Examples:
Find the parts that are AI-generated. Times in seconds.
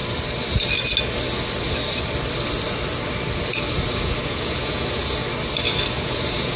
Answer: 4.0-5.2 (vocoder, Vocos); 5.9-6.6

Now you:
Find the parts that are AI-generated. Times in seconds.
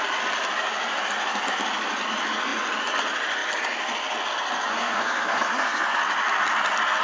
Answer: 4.7-6.0 (codec, SNAC)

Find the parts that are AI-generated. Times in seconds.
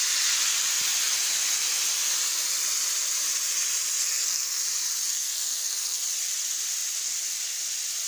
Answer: 4.0-4.6 (codec, SNAC); 5.1-6.0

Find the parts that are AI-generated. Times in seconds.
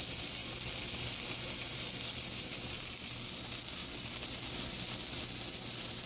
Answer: none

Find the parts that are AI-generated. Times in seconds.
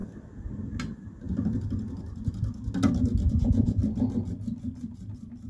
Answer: 3.3-3.8 (vocoder, Vocos)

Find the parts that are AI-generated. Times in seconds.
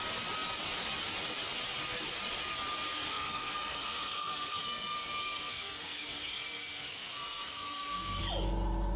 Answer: 3.1-8.2 (codec, SNAC)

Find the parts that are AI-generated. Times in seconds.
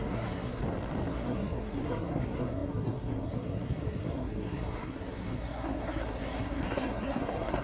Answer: 0.0-0.6 (codec, SNAC); 1.1-7.6